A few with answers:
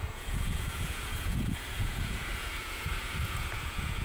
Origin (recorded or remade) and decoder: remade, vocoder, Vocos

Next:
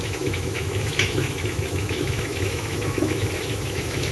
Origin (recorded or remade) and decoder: remade, autoencoder, DAC-VAE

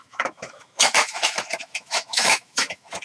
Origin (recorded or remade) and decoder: remade, autoencoder, DAC-VAE